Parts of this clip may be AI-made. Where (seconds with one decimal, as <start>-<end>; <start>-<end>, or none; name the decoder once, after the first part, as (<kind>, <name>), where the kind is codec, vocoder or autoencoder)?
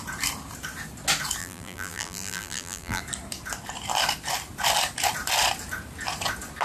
1.4-3.0 (vocoder, BigVGAN v2)